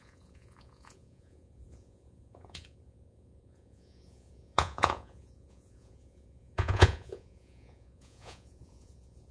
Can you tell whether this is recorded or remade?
remade